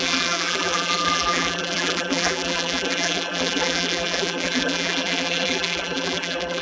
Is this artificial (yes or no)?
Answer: yes